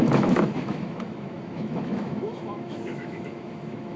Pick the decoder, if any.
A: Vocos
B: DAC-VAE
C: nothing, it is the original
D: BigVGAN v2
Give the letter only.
B